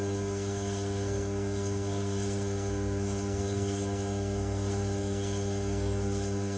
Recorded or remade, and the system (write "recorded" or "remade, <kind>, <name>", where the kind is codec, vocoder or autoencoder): remade, codec, SNAC